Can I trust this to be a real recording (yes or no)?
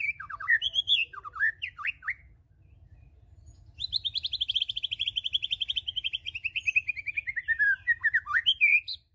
yes